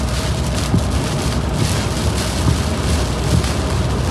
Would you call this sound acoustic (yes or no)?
yes